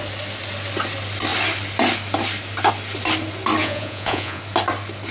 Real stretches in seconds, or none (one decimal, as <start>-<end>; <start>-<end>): 0.0-3.6; 4.4-5.1